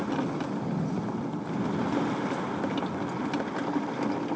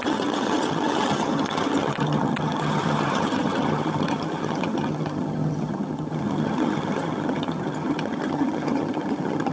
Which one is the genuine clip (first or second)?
first